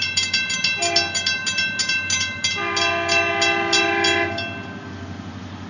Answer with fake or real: real